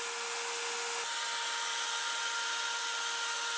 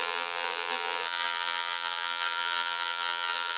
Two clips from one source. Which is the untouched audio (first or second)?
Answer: first